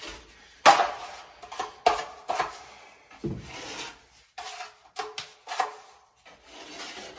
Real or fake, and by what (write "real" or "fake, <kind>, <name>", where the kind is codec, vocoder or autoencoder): real